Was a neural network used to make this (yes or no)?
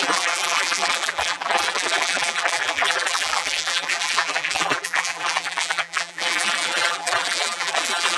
yes